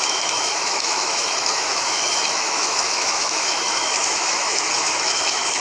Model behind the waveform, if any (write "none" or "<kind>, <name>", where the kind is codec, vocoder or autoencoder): autoencoder, DAC-VAE